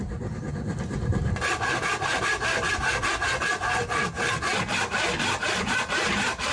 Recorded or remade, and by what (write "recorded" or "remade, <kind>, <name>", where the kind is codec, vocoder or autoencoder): recorded